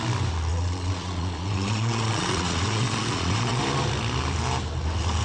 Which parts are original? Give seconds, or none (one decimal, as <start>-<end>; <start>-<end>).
0.0-0.5; 3.6-5.2